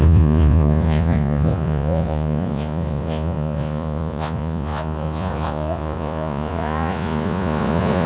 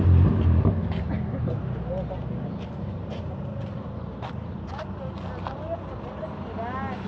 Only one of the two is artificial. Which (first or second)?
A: first